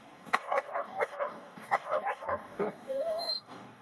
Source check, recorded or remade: remade